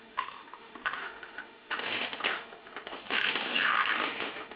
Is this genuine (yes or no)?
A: no